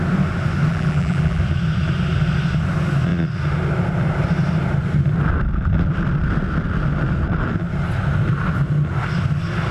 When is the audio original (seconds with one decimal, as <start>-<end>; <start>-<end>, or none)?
0.0-0.7; 1.4-9.7